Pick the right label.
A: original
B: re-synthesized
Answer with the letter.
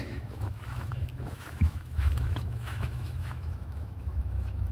B